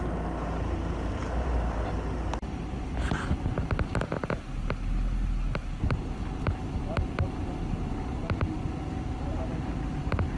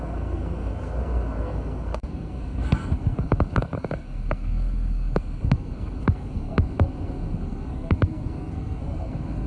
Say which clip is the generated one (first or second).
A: second